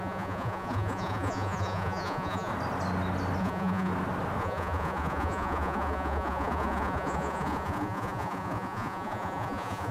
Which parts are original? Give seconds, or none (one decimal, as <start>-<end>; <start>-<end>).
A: 2.5-3.4; 3.9-4.4